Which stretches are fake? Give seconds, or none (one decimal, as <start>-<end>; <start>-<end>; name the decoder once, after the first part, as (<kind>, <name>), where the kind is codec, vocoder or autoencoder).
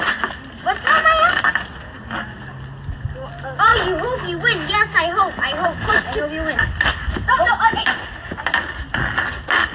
none